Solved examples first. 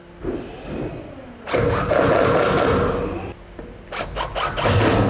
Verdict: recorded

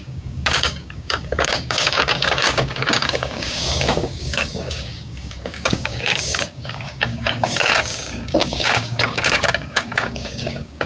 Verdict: remade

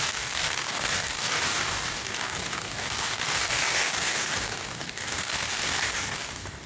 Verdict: remade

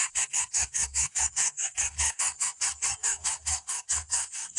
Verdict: remade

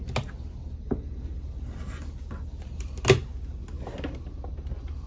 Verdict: recorded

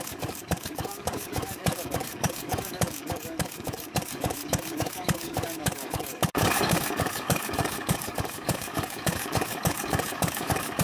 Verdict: remade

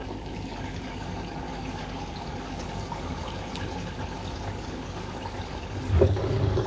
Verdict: remade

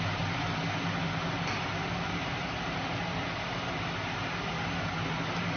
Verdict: recorded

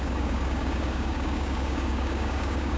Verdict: remade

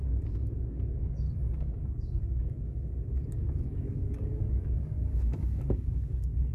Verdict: remade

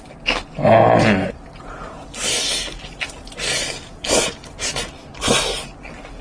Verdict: recorded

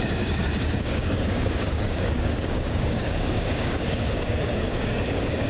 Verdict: remade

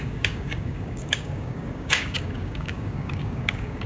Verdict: remade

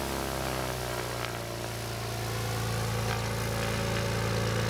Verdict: recorded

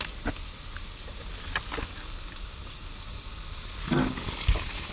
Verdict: recorded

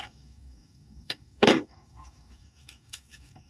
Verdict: remade